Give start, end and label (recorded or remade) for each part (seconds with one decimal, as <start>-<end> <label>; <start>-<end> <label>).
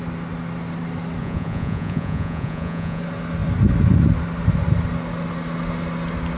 0.0-1.2 recorded; 1.2-3.0 remade; 3.0-6.4 recorded